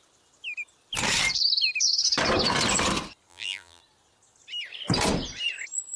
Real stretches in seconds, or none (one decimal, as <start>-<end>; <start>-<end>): 0.0-3.3; 3.8-6.0